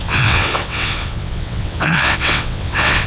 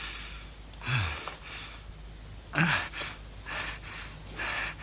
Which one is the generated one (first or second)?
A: first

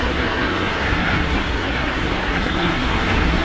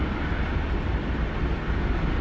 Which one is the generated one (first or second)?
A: first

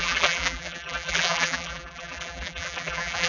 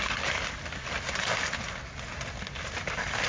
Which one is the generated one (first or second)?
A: first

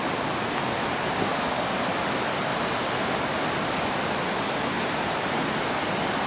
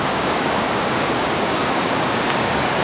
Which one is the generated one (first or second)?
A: second